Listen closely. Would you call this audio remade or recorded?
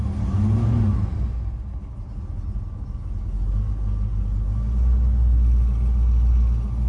recorded